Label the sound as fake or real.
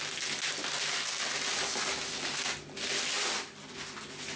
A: real